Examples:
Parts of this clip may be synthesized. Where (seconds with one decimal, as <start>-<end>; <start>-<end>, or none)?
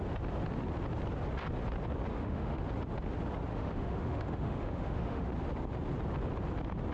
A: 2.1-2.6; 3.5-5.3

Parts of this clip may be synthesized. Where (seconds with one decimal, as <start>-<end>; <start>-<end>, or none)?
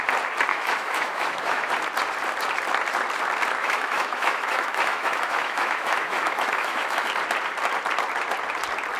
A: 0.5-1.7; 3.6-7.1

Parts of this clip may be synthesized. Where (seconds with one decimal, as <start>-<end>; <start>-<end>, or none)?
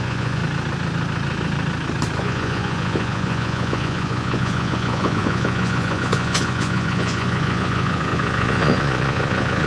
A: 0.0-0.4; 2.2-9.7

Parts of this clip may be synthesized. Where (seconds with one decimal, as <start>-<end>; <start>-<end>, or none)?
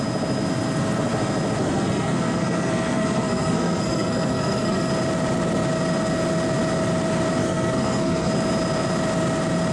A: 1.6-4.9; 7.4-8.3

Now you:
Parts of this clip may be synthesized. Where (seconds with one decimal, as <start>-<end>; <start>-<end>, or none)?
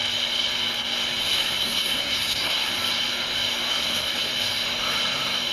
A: 1.2-2.7; 3.7-4.3